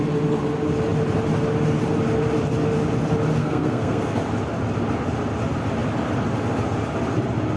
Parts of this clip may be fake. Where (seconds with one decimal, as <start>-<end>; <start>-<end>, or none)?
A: 3.4-4.2